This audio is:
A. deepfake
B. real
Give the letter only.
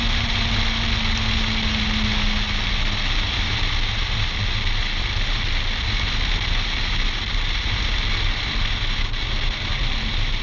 B